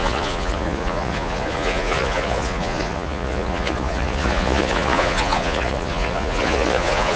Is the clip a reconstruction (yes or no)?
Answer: yes